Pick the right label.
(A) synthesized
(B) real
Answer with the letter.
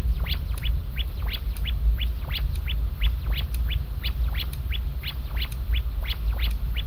B